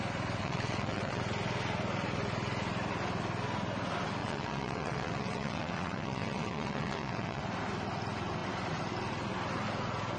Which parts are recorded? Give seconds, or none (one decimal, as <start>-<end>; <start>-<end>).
0.0-0.4; 1.2-4.2; 7.4-10.2